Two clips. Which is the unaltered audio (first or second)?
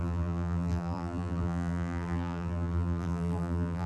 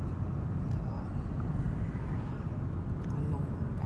second